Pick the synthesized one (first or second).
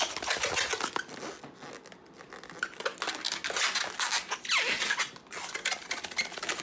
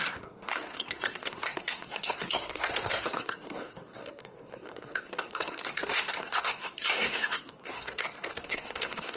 second